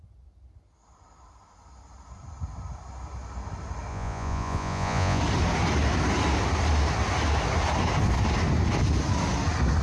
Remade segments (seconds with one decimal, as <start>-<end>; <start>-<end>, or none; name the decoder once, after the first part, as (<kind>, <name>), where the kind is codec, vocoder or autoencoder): 3.9-5.2 (vocoder, Vocos)